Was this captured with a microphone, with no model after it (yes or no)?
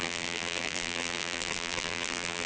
no